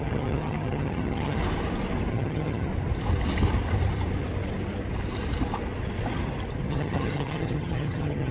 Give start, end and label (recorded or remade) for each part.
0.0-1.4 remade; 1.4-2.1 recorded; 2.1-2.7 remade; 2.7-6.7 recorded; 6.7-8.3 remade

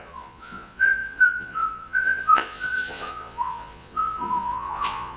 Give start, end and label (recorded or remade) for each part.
0.0-5.2 remade

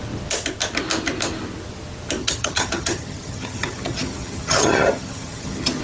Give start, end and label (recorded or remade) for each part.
0.0-2.2 recorded; 2.2-5.8 remade

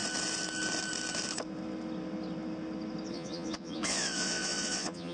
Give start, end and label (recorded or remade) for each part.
0.0-3.1 recorded; 3.1-5.1 remade

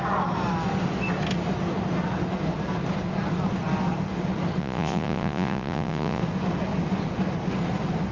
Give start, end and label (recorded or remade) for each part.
0.0-4.6 recorded; 4.6-6.2 remade; 6.2-8.1 recorded

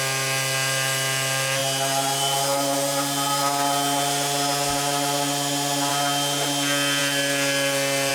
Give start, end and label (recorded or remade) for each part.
0.0-8.1 recorded

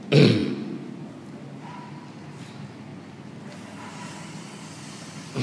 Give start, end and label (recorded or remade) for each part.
0.0-5.4 recorded